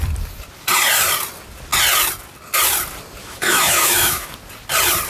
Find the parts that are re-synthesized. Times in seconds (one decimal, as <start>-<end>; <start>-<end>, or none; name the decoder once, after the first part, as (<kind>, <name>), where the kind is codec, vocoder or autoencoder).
3.2-4.3 (autoencoder, DAC-VAE)